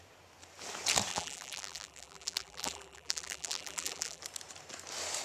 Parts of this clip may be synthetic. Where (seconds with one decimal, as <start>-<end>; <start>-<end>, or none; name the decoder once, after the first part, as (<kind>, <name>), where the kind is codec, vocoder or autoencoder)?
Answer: 1.1-4.2 (vocoder, BigVGAN v2)